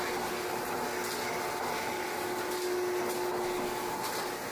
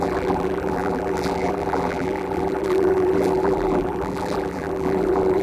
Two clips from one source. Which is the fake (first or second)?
second